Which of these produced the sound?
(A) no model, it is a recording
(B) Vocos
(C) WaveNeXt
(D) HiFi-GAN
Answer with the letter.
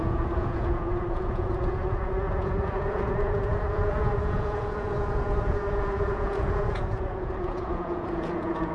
B